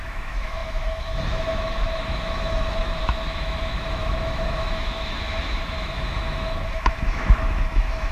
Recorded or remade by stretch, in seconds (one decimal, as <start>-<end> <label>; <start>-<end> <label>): 0.0-8.1 remade